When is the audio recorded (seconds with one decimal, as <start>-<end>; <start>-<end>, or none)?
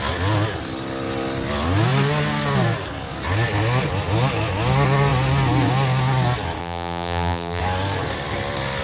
0.0-6.6; 7.6-8.8